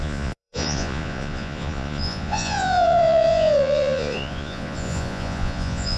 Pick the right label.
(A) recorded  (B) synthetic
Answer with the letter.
B